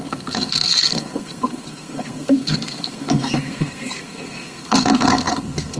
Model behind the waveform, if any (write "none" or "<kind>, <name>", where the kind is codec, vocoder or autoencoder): codec, SNAC